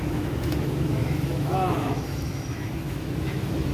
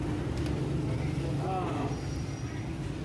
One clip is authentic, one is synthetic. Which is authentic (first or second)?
second